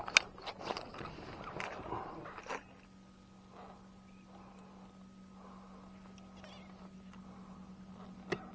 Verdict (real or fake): real